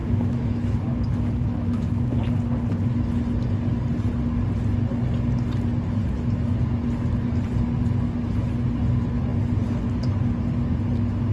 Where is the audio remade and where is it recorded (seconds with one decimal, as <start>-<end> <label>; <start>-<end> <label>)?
0.0-2.1 remade; 2.1-11.3 recorded